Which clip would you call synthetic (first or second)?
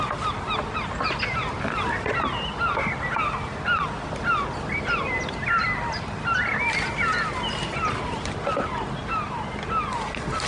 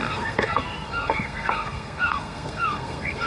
second